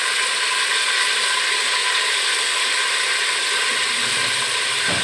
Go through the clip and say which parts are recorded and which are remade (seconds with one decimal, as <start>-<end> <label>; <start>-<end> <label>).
0.0-5.0 recorded